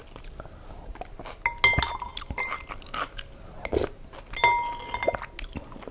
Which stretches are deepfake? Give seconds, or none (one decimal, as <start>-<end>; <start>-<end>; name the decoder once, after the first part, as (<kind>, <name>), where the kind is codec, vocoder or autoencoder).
none